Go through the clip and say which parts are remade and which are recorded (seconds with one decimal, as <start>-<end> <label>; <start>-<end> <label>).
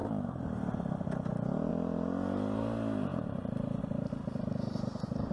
0.0-5.3 recorded